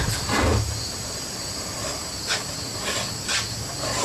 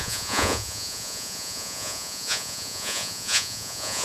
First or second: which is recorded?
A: first